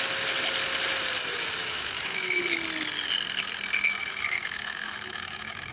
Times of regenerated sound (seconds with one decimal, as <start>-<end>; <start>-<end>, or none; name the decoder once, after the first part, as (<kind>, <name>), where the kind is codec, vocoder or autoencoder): 1.6-2.4 (autoencoder, DAC-VAE); 4.0-5.7